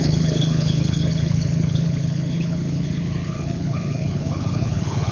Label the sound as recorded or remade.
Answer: remade